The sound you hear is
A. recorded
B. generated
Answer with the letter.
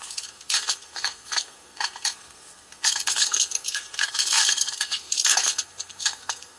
B